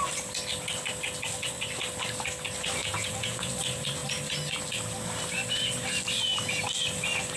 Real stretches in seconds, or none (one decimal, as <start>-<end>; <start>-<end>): 0.0-2.8; 3.5-7.4

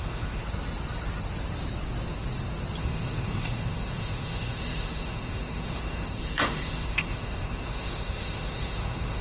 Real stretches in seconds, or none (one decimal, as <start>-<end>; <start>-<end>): 0.4-2.8

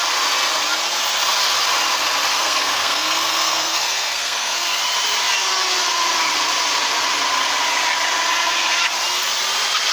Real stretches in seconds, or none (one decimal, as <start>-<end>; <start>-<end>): 0.0-2.3; 4.8-9.9

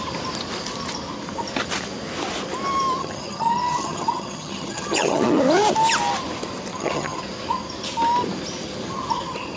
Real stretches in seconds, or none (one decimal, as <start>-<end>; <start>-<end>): 0.0-3.0; 5.2-6.7; 7.2-9.6

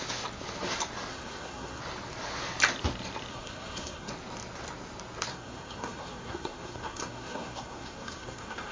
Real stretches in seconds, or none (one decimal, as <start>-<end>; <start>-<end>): 0.0-1.1; 1.8-3.3; 4.1-5.3